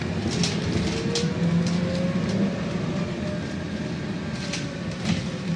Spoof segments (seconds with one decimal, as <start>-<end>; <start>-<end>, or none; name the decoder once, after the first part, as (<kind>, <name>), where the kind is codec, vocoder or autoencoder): none